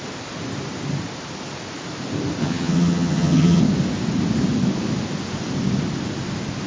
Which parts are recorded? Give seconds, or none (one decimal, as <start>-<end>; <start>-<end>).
0.0-2.4; 3.6-6.7